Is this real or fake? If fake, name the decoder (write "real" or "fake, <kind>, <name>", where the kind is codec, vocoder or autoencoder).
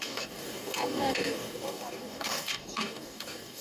fake, codec, DAC